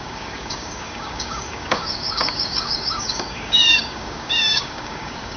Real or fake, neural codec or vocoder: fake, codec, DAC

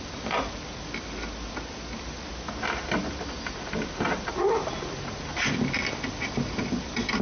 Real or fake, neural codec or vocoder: real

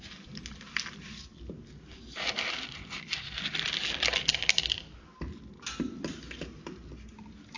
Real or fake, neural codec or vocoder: real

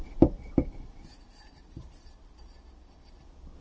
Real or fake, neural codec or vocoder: real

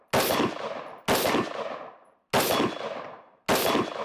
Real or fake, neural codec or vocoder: real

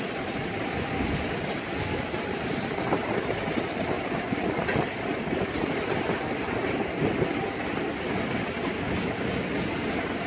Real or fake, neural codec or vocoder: real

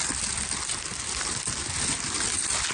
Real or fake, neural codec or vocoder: fake, vocoder, BigVGAN v2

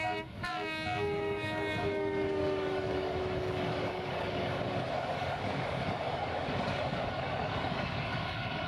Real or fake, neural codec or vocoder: fake, codec, DAC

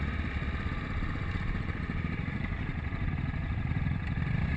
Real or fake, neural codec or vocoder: real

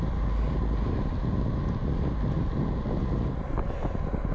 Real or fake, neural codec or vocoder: real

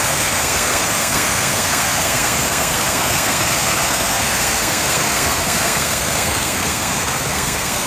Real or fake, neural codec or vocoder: fake, codec, SNAC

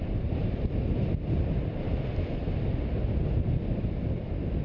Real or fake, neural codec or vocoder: real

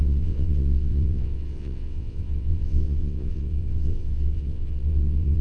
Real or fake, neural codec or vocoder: fake, vocoder, WaveNeXt